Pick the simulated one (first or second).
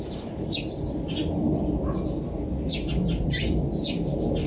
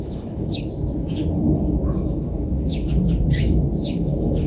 second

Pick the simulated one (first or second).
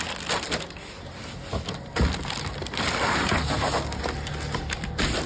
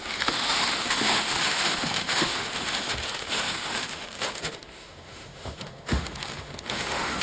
second